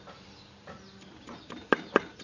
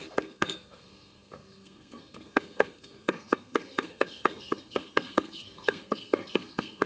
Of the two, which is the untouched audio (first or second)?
first